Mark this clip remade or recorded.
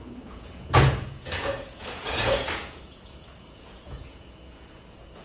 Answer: remade